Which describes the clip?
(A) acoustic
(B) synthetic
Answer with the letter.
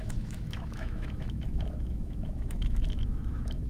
B